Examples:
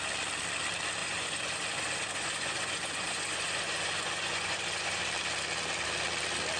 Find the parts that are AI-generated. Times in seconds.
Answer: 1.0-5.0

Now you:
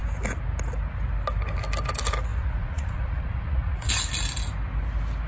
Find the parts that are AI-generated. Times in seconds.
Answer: 2.3-3.9